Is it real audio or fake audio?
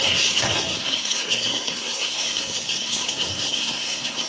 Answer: fake